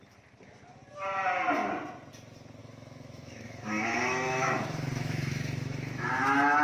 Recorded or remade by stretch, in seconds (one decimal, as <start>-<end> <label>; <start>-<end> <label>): 0.0-2.6 recorded; 2.6-6.6 remade